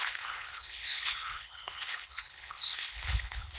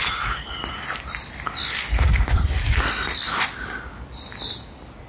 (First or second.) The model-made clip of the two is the first